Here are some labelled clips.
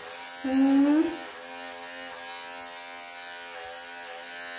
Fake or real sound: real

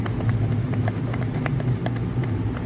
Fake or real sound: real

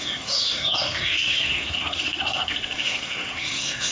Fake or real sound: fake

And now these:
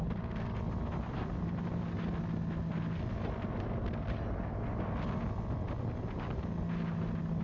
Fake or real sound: real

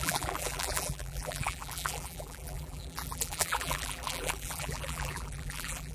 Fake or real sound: fake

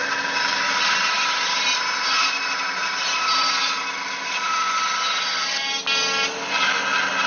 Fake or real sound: real